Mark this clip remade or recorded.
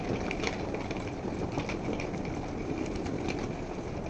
recorded